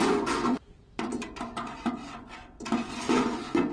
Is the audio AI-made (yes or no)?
yes